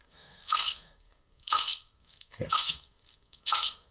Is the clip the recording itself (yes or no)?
no